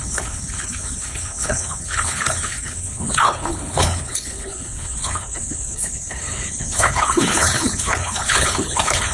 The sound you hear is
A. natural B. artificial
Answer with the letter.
B